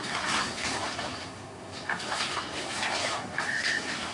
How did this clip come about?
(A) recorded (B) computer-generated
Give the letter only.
B